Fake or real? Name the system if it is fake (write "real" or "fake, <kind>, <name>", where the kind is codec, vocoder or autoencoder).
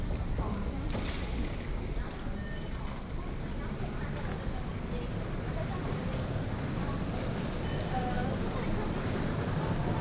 real